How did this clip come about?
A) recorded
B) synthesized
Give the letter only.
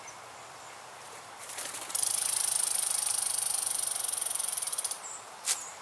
B